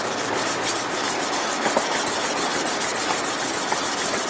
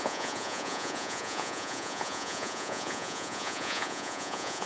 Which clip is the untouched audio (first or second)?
first